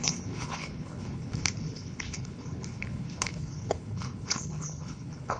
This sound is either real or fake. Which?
fake